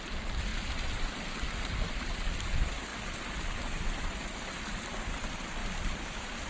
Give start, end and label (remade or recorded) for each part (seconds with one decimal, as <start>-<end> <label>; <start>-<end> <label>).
0.0-0.5 recorded; 0.5-2.1 remade; 2.1-5.6 recorded; 5.6-6.5 remade